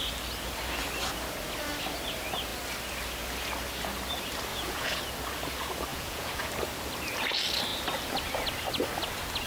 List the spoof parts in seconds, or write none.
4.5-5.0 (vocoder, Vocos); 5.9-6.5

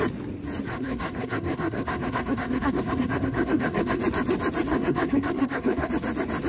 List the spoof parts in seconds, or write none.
0.7-4.0 (codec, SNAC); 4.7-5.9

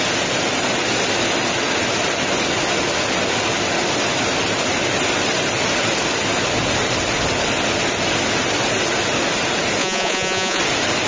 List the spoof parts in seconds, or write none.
9.8-10.6 (vocoder, Vocos)

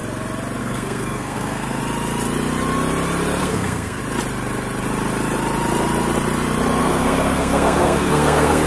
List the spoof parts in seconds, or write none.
0.6-1.8 (codec, SNAC); 3.4-4.0; 6.8-8.7

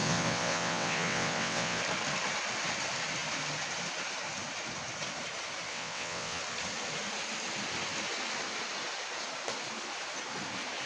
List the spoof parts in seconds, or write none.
0.0-1.8 (vocoder, WaveNeXt); 5.7-6.4

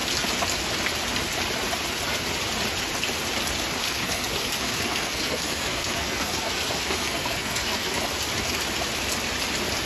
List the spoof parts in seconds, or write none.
3.8-7.9 (codec, SNAC)